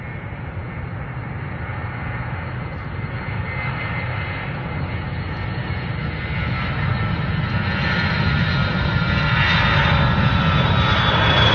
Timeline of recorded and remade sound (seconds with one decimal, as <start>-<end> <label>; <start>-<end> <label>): 0.0-11.5 recorded